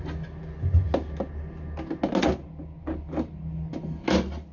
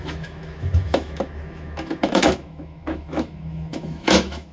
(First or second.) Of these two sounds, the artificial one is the second